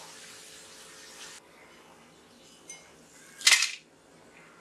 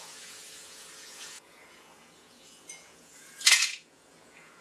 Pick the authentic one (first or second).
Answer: first